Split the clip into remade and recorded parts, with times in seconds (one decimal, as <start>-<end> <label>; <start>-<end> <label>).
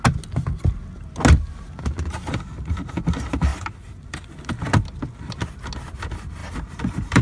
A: 0.0-3.5 recorded; 3.5-4.3 remade; 4.3-6.4 recorded; 6.4-7.2 remade